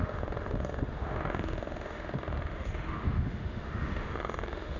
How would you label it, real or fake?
fake